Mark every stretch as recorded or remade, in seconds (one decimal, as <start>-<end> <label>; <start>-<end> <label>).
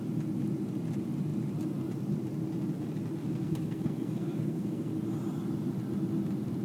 0.0-3.2 recorded; 3.2-4.9 remade; 4.9-6.6 recorded